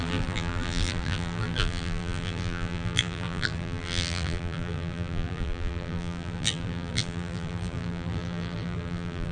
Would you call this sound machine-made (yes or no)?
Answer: yes